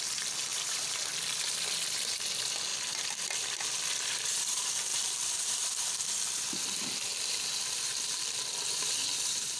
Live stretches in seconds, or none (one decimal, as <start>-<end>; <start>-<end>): 0.0-0.5; 1.1-4.9; 5.9-9.6